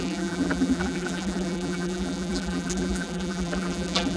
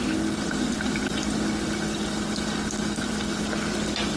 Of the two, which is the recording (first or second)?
second